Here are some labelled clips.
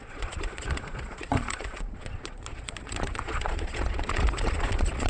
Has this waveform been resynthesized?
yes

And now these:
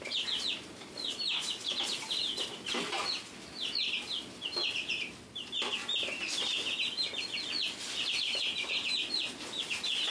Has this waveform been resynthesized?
no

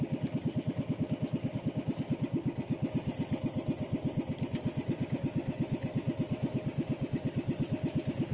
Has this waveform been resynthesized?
no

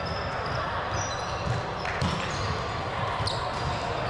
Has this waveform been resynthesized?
no